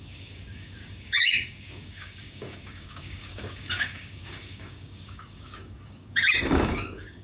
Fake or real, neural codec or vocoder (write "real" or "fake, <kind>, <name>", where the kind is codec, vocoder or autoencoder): fake, codec, DAC